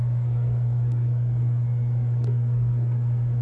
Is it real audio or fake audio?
fake